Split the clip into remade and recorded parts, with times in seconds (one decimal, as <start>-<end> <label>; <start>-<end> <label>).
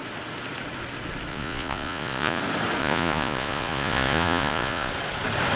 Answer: 0.0-1.3 recorded; 1.3-2.4 remade; 2.4-2.8 recorded; 2.8-4.9 remade; 4.9-5.6 recorded